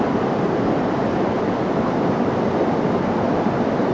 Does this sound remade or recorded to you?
recorded